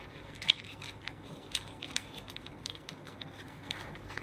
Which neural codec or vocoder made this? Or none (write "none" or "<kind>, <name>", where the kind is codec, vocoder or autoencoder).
codec, SNAC